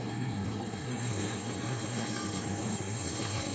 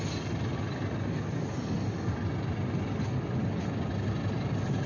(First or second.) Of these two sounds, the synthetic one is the first